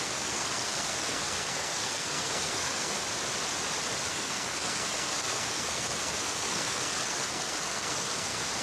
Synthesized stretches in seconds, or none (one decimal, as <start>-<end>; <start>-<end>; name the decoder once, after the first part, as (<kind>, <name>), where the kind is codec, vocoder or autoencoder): 0.0-3.0 (codec, SNAC); 4.1-8.6